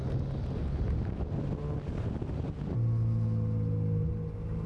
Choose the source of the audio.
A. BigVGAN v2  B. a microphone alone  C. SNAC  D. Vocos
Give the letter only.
B